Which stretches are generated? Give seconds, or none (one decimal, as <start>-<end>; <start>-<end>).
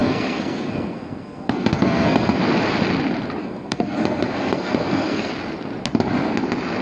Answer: 0.0-2.4; 3.4-5.3